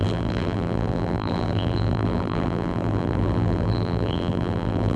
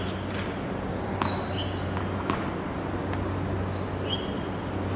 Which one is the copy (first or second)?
first